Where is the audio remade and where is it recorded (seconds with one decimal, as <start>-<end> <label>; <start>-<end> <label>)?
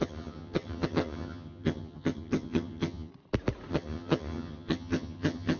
0.0-3.1 remade; 3.1-3.7 recorded; 3.7-5.6 remade